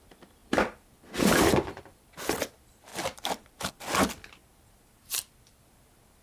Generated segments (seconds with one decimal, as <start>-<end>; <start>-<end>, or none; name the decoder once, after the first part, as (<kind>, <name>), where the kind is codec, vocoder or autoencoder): 0.4-1.8 (vocoder, BigVGAN v2); 2.9-3.7